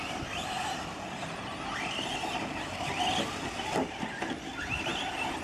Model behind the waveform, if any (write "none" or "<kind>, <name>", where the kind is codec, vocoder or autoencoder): none